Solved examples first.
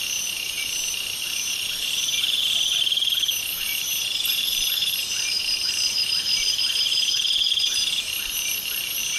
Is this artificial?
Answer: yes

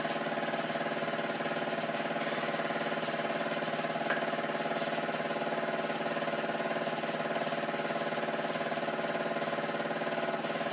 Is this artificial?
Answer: no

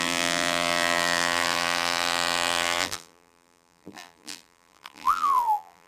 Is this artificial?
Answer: yes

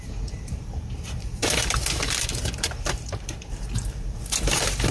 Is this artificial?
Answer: yes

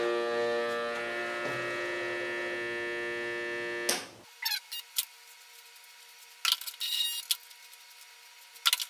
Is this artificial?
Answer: no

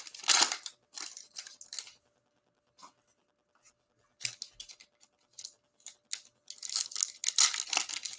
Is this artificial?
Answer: no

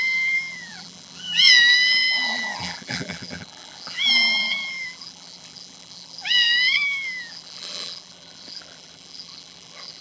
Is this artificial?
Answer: yes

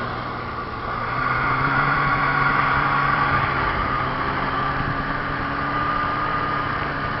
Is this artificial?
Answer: yes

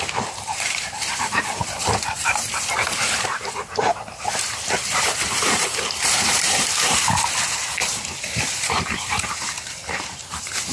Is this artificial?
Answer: yes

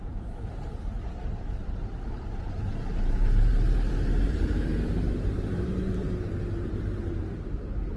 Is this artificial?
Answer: yes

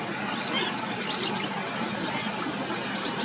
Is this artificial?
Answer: no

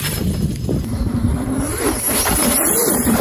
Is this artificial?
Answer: no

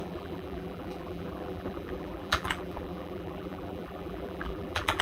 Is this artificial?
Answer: yes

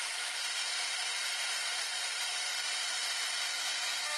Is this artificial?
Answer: no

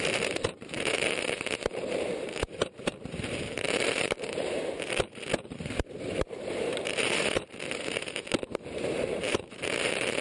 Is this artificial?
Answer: yes